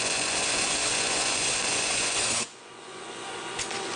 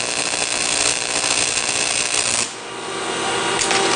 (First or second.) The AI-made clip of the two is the first